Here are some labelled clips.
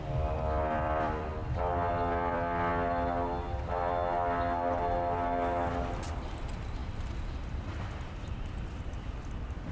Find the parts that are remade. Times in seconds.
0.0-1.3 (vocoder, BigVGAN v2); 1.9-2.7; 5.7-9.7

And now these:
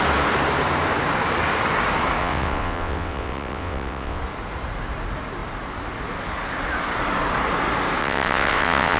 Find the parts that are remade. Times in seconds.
2.2-4.2 (vocoder, WaveNeXt); 8.0-9.0